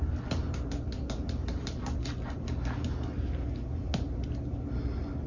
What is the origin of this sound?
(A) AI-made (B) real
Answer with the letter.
B